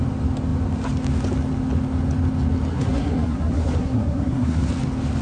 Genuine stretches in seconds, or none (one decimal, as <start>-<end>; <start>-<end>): 0.0-2.7; 4.7-5.2